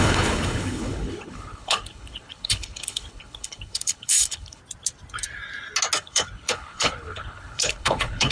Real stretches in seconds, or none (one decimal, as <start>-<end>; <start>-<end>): 4.6-6.0